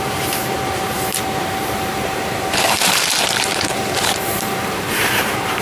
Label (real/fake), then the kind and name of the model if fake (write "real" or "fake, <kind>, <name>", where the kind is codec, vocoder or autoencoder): fake, vocoder, BigVGAN v2